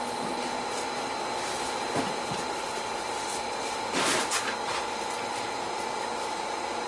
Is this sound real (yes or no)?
yes